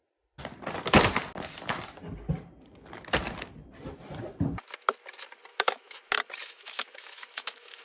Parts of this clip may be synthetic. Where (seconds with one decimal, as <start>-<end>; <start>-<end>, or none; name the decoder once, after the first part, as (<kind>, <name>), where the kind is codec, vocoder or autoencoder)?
5.5-6.0 (autoencoder, DAC-VAE); 6.4-7.8